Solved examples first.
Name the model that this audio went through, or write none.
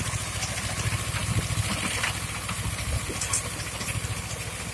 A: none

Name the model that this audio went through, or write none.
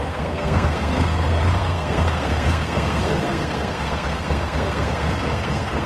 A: codec, SNAC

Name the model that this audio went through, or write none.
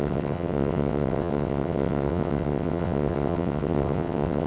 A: vocoder, WaveNeXt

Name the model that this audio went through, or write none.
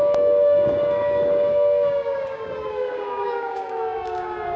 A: codec, DAC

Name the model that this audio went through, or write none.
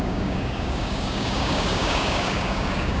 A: codec, DAC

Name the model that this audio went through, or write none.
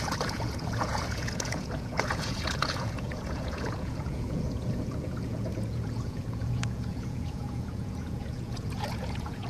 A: vocoder, Vocos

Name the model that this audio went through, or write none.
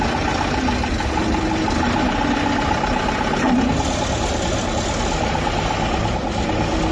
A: none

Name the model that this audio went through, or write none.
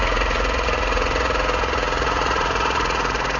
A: vocoder, Vocos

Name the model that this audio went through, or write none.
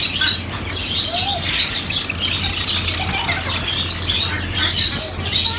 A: none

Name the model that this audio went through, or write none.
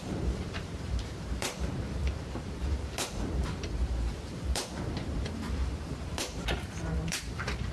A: vocoder, BigVGAN v2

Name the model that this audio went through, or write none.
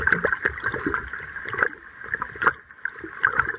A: none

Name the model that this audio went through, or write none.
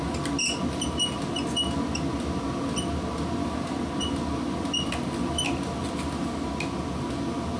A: none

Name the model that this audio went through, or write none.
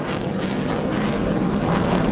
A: none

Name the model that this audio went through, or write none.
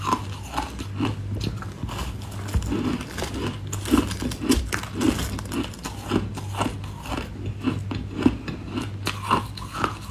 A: none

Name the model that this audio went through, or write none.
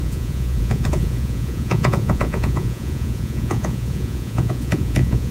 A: vocoder, Vocos